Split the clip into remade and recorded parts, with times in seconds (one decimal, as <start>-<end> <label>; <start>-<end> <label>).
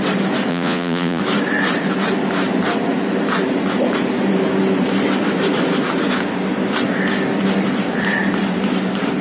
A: 0.0-0.5 recorded; 0.5-1.2 remade; 1.2-9.2 recorded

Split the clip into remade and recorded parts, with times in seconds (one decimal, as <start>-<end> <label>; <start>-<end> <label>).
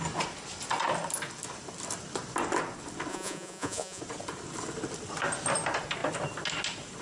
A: 0.0-3.1 recorded; 3.1-4.0 remade; 4.0-7.0 recorded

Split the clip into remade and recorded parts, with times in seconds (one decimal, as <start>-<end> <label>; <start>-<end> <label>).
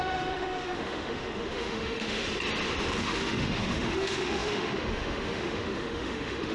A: 0.0-2.2 remade; 2.2-3.0 recorded; 3.0-6.5 remade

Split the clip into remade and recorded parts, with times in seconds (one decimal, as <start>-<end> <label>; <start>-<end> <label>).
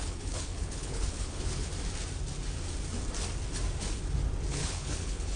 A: 0.0-1.7 remade; 1.7-4.5 recorded; 4.5-5.4 remade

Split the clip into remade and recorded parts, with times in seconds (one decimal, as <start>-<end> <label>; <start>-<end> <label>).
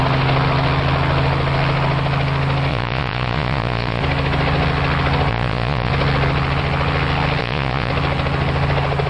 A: 0.0-2.7 recorded; 2.7-4.0 remade; 4.0-5.3 recorded; 5.3-5.9 remade; 5.9-7.4 recorded; 7.4-7.9 remade; 7.9-9.1 recorded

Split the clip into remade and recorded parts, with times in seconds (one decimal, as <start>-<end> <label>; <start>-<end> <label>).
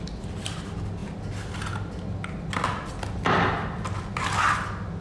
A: 0.0-5.0 recorded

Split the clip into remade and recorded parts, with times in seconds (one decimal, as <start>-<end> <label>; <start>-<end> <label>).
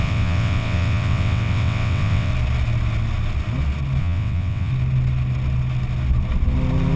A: 0.0-2.3 remade; 2.3-4.0 recorded; 4.0-4.7 remade; 4.7-7.0 recorded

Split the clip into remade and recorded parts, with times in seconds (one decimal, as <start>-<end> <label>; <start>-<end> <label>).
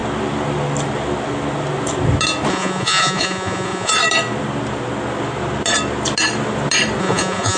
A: 0.0-2.5 recorded; 2.5-3.9 remade; 3.9-7.0 recorded; 7.0-7.6 remade